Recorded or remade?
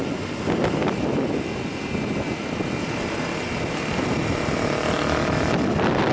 recorded